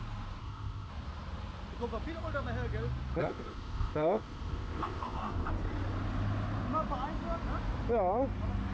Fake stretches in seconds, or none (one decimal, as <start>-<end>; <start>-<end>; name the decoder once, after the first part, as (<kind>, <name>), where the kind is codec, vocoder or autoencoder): 0.4-0.9 (codec, ZipCodec); 3.2-5.5